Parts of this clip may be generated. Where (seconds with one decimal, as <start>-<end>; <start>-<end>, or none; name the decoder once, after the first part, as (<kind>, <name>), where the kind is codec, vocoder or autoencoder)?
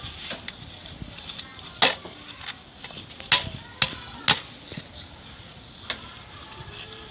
none